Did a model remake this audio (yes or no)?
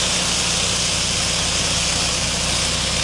no